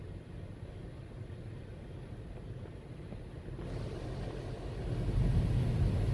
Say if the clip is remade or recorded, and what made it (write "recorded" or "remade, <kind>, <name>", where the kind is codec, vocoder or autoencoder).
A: recorded